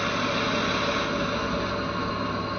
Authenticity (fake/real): real